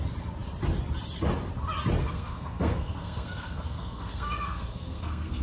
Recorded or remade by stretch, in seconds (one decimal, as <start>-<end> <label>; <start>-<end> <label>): 0.0-2.0 recorded; 2.0-5.4 remade